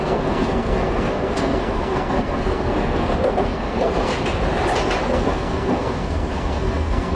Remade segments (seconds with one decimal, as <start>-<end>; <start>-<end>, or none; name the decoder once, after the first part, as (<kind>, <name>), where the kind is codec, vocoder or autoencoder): 0.0-4.1 (codec, SNAC); 5.1-7.2